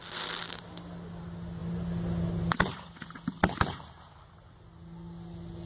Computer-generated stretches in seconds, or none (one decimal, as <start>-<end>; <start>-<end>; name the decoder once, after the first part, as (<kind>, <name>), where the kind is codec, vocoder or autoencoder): none